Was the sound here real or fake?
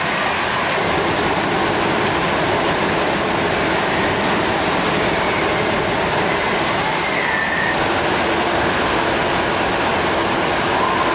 real